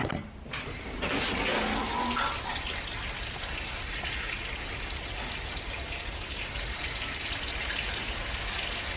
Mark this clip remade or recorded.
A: recorded